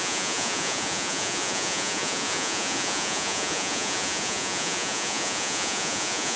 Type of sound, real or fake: fake